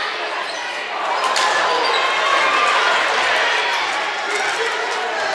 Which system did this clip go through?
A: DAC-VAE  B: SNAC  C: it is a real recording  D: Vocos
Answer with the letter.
C